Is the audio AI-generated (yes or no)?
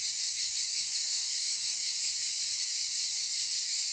yes